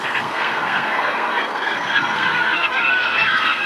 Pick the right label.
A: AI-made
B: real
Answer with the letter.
A